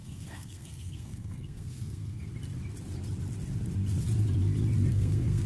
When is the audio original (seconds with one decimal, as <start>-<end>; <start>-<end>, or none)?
2.3-4.9